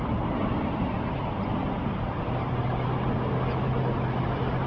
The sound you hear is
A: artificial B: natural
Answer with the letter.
B